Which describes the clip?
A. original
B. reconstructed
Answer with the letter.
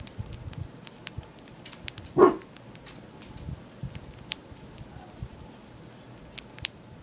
A